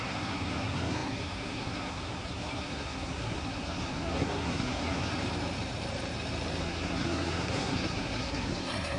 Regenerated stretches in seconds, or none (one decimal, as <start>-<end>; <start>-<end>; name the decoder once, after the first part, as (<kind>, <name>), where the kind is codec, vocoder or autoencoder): 0.0-5.1 (codec, SNAC); 6.6-9.0